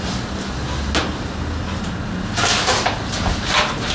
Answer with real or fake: real